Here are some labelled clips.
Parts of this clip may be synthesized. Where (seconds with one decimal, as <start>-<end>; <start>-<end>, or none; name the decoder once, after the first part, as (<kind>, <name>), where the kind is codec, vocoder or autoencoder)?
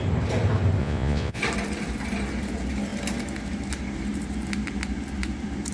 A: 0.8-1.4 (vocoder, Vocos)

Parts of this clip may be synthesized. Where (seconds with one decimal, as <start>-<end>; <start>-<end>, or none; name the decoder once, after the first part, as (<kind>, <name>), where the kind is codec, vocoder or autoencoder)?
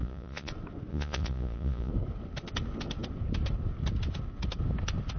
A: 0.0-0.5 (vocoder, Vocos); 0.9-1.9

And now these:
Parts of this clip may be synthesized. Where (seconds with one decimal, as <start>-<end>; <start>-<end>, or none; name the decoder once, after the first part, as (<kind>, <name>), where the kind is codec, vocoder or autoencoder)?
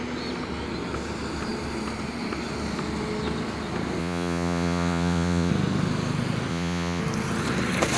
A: 4.0-5.5 (vocoder, Vocos); 6.5-7.0